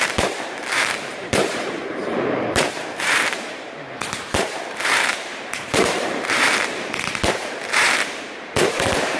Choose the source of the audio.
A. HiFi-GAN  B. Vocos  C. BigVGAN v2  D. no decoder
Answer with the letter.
C